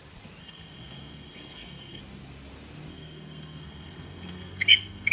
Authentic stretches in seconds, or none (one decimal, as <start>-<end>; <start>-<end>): 0.0-0.4; 2.0-2.9